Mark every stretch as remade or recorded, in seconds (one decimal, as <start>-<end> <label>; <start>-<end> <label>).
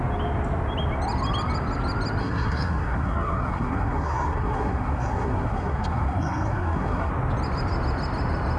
0.0-2.2 recorded; 2.2-7.1 remade; 7.1-8.6 recorded